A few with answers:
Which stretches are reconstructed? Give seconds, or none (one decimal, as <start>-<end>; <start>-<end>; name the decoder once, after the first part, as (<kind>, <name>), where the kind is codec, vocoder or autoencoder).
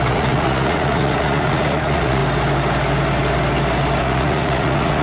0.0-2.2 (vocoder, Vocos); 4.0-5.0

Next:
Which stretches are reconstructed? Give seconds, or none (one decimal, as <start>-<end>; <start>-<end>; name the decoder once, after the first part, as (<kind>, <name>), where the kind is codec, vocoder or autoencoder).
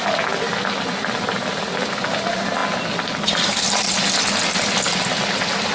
none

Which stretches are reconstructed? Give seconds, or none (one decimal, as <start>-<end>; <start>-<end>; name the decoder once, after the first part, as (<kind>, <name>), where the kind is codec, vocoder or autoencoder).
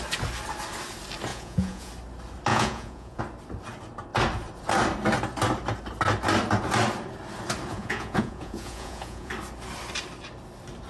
1.3-1.9 (vocoder, Vocos); 2.5-3.2; 7.7-9.3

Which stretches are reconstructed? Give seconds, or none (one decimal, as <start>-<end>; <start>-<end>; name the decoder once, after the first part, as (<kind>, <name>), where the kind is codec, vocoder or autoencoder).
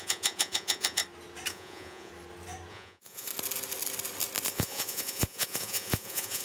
0.0-1.0 (vocoder, Vocos); 1.5-2.1; 2.7-3.3; 4.5-6.4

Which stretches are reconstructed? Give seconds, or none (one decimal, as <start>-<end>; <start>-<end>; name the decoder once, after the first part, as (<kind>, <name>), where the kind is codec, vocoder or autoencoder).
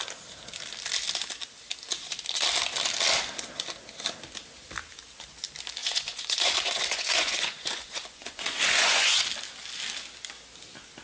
5.8-9.2 (vocoder, Vocos)